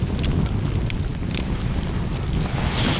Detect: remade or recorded recorded